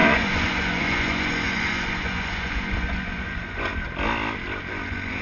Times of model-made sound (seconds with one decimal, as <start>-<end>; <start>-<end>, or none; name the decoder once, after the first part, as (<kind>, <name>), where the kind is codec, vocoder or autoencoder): 0.0-3.7 (vocoder, Vocos); 4.7-5.2